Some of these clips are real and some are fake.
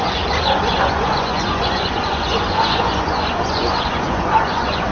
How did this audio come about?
fake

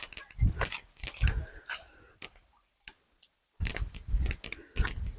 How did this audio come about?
real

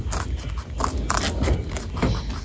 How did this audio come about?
real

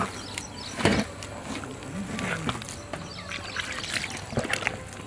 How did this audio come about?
real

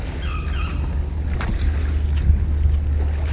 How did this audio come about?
real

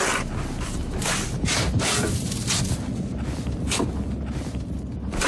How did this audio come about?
real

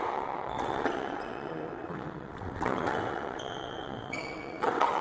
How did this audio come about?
fake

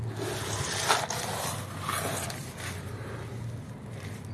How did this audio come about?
real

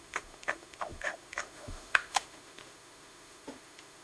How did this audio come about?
fake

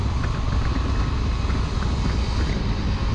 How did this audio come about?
real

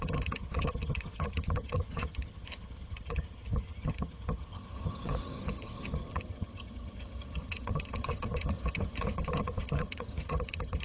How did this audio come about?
fake